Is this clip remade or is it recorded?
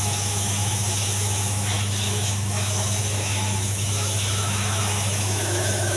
remade